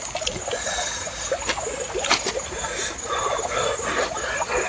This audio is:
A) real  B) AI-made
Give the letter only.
A